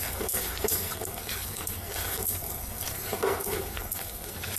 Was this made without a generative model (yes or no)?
no